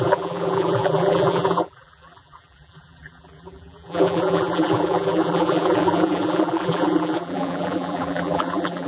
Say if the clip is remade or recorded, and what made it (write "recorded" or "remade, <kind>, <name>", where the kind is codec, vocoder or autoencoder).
remade, vocoder, BigVGAN v2